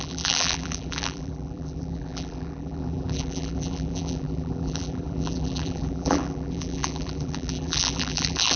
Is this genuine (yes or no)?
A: no